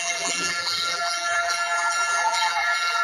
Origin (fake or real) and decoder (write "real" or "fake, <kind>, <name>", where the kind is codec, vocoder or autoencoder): fake, vocoder, BigVGAN v2